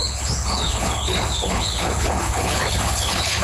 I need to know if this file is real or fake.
fake